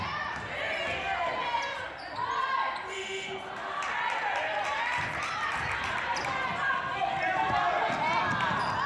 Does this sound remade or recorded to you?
recorded